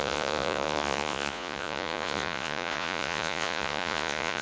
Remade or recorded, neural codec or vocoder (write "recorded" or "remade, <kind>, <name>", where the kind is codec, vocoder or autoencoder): remade, vocoder, Vocos